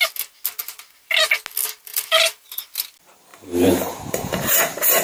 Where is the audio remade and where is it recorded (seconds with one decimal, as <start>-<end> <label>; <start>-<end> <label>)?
0.0-3.3 recorded; 3.3-4.6 remade; 4.6-5.0 recorded